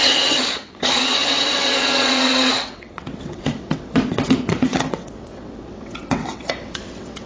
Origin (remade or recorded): remade